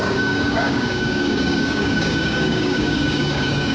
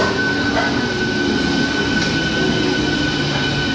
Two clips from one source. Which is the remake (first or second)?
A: first